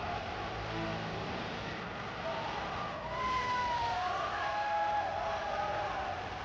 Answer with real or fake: real